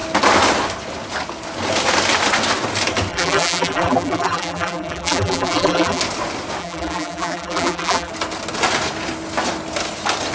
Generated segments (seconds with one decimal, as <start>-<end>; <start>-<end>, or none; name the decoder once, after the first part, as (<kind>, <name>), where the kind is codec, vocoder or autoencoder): 3.1-6.0 (vocoder, BigVGAN v2); 6.6-8.1